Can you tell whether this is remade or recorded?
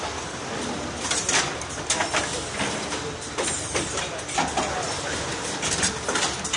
recorded